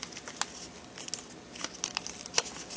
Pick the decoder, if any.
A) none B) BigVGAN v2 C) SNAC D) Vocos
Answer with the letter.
A